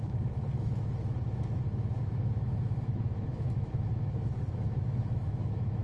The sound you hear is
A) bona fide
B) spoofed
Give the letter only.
B